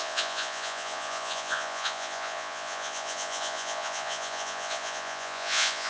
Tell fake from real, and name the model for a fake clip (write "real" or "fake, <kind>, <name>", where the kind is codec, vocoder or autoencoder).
fake, vocoder, Vocos